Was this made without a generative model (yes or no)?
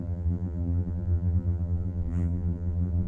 no